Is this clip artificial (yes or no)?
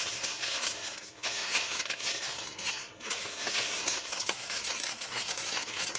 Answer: yes